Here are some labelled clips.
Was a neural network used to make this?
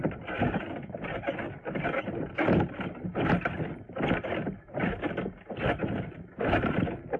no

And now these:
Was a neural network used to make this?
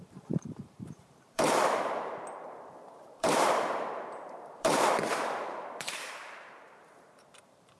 yes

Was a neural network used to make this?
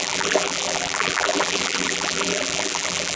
yes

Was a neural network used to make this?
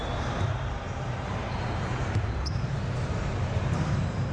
yes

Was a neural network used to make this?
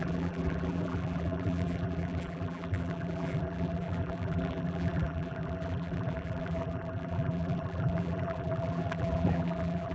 yes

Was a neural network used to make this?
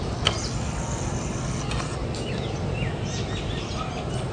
no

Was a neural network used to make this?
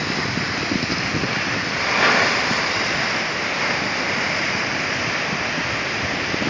yes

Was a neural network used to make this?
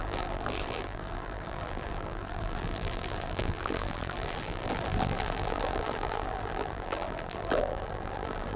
yes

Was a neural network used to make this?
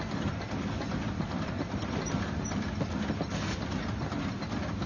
no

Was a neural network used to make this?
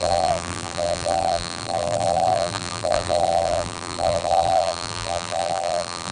yes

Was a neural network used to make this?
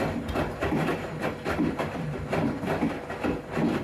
yes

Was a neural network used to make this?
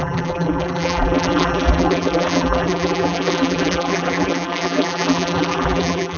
yes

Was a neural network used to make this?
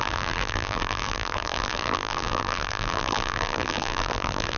yes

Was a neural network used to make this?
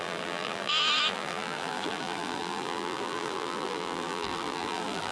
yes